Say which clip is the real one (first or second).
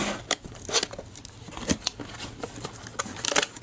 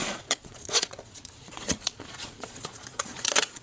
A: first